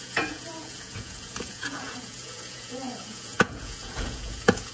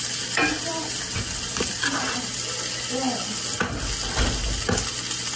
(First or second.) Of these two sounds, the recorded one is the second